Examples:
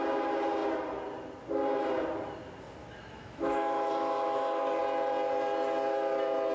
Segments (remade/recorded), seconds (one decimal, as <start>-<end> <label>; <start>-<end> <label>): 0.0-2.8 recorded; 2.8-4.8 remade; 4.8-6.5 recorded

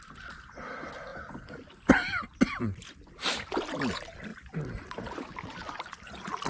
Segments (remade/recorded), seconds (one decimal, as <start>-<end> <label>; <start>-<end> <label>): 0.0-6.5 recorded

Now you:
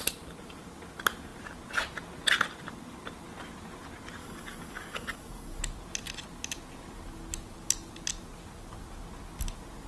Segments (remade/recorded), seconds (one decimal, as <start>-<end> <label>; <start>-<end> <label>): 0.0-4.2 recorded; 4.2-5.6 remade; 5.6-9.9 recorded

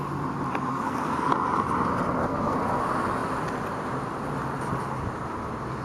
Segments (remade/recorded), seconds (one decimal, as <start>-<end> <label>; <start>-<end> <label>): 0.0-0.7 recorded; 0.7-1.3 remade; 1.3-2.2 recorded; 2.2-2.8 remade; 2.8-5.8 recorded

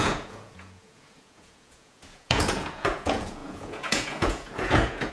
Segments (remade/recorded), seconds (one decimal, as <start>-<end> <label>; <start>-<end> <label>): 0.0-5.1 remade

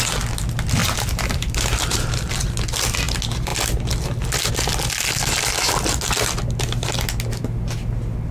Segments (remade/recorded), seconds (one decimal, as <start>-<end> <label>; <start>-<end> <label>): 0.0-0.8 recorded; 0.8-2.3 remade; 2.3-8.3 recorded

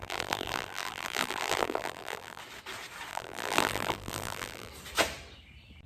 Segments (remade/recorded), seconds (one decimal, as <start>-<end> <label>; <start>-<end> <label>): 0.0-2.4 remade; 2.4-3.1 recorded; 3.1-4.7 remade; 4.7-5.9 recorded